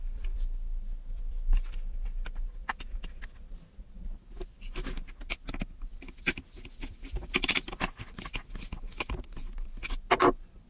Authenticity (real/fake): real